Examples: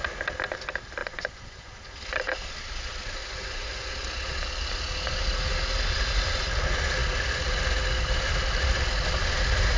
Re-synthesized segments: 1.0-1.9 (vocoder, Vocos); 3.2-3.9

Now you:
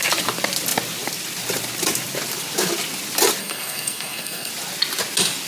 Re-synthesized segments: 3.4-4.5 (codec, SNAC)

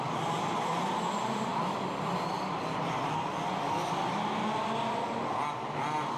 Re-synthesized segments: none

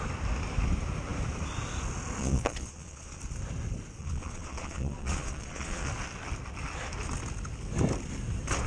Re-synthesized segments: 2.2-3.2 (vocoder, Vocos); 4.0-5.9

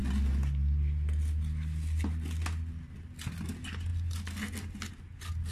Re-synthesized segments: none

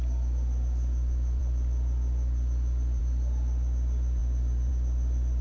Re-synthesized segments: none

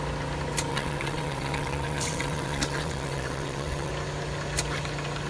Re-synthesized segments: 0.7-3.9 (vocoder, WaveNeXt)